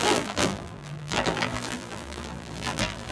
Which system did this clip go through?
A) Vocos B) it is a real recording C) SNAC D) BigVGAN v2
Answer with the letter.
D